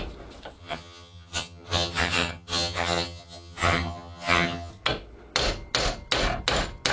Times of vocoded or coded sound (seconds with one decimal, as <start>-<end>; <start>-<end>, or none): 0.6-4.7